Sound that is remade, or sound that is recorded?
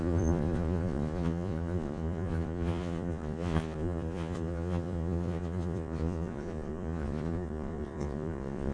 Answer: remade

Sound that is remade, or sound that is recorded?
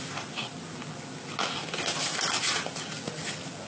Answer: recorded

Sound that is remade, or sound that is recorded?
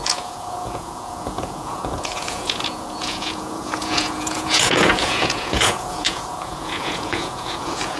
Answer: remade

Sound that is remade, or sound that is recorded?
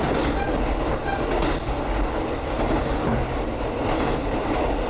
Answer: recorded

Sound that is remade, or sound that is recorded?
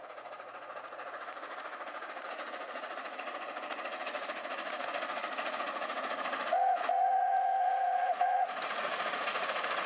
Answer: remade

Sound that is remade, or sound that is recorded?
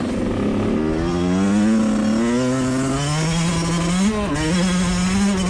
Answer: recorded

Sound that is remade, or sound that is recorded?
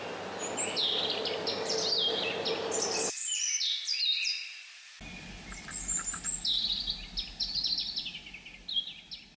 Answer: recorded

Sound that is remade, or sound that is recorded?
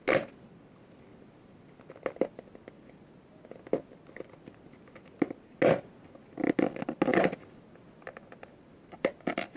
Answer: recorded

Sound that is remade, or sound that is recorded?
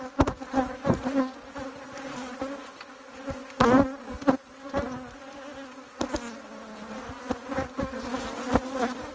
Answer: recorded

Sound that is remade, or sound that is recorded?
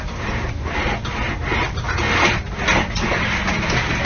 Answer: recorded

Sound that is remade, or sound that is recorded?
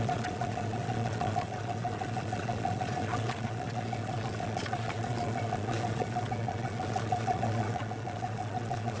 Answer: remade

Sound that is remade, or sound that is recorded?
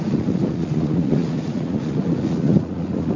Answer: remade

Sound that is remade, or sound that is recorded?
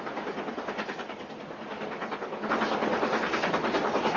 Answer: recorded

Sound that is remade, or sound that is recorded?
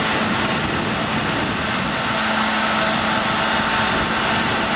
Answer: recorded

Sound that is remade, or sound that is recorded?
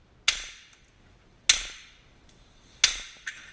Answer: recorded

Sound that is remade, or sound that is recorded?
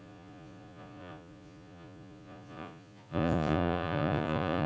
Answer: remade